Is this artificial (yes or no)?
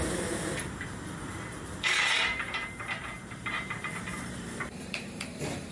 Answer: yes